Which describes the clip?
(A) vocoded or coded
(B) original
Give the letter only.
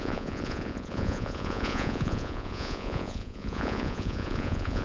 A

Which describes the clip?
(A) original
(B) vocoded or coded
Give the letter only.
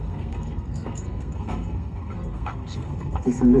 B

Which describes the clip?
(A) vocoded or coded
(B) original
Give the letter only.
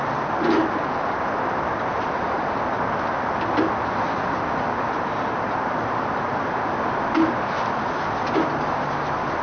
B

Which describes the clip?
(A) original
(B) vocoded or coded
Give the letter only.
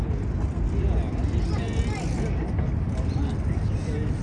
A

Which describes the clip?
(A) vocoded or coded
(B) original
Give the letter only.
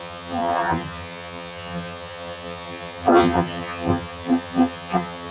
A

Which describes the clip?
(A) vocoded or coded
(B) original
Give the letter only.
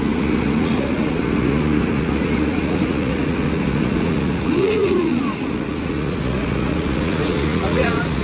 A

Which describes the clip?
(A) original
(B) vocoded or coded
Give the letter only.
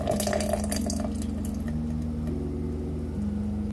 A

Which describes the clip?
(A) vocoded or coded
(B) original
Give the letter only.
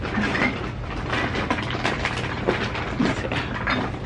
B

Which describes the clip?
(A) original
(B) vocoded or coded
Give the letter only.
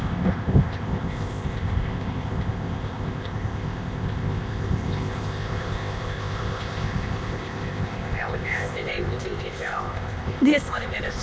B